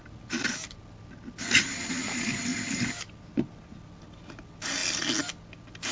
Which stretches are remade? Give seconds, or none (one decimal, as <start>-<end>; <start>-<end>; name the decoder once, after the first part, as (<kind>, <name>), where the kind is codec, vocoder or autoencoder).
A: none